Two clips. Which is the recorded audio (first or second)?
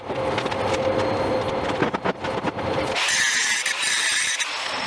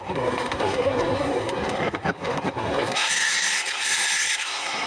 first